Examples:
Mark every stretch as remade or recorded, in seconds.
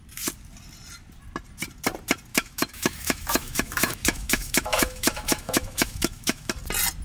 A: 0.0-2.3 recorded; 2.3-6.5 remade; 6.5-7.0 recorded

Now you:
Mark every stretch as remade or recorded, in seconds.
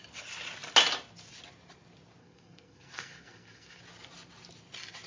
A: 0.0-2.2 recorded; 2.2-3.8 remade; 3.8-5.1 recorded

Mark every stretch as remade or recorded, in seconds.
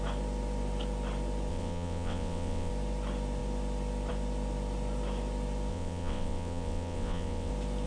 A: 0.0-1.5 recorded; 1.5-2.7 remade; 2.7-5.7 recorded; 5.7-7.5 remade; 7.5-7.9 recorded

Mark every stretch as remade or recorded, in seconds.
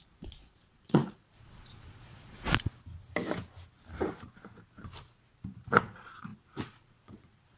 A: 0.0-2.7 remade; 2.7-5.8 recorded; 5.8-7.6 remade